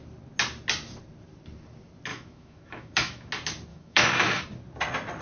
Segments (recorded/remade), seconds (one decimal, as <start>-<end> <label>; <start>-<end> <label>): 0.0-2.1 recorded; 2.1-3.3 remade; 3.3-3.7 recorded; 3.7-4.4 remade; 4.4-5.2 recorded